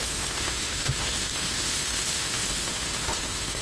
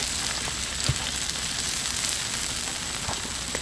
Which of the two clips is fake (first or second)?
first